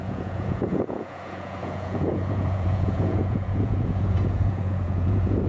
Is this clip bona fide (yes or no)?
no